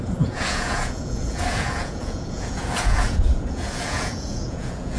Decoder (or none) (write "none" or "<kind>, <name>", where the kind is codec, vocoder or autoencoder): vocoder, Vocos